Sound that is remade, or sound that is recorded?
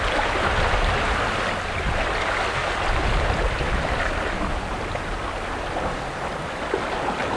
recorded